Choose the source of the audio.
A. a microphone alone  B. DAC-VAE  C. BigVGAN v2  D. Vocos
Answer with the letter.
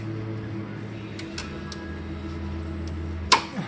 A